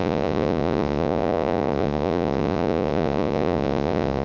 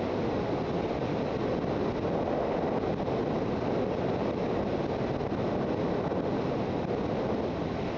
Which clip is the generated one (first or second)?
first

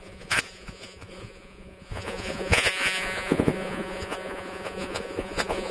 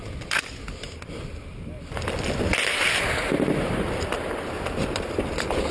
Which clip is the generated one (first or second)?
first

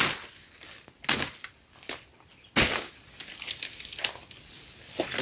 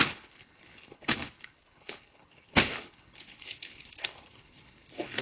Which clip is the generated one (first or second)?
second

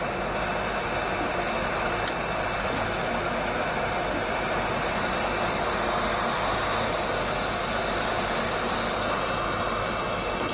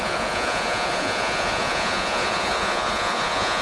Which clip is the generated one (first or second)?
second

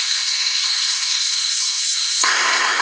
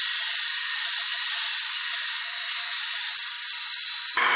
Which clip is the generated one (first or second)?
first